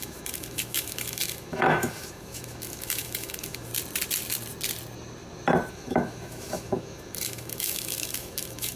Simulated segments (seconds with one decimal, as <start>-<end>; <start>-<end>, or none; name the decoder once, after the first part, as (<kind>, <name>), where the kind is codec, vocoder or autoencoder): 0.0-3.7 (autoencoder, DAC-VAE); 5.7-8.8